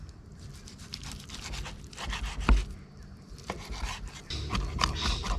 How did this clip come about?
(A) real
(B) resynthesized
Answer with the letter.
A